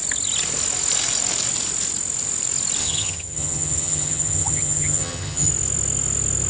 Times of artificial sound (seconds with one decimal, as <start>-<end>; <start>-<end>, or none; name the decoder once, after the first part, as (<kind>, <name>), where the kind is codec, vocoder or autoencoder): 2.8-5.5 (vocoder, HiFi-GAN)